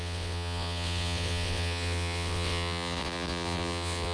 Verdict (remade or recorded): remade